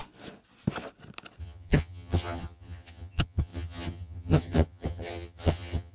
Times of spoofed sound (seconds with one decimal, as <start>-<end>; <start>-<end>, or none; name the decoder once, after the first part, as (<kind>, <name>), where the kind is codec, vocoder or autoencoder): 1.4-5.9 (vocoder, HiFi-GAN)